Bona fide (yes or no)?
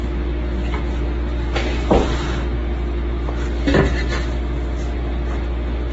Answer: yes